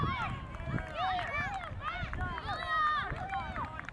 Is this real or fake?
real